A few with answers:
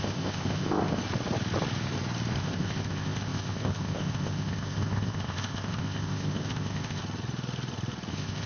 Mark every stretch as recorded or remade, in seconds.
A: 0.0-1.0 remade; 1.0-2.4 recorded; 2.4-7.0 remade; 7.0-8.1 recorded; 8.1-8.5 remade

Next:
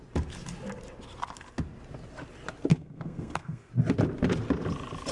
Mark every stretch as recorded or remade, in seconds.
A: 0.0-2.7 recorded; 2.7-3.7 remade; 3.7-5.1 recorded